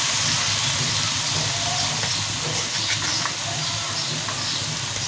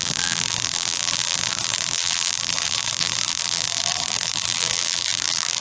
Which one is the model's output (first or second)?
second